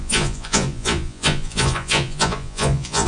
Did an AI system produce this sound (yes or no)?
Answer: yes